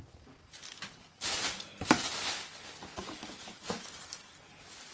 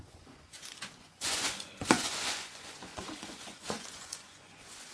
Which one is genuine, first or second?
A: first